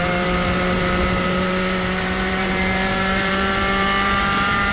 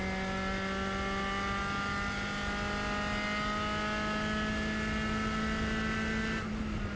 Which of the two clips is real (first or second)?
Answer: second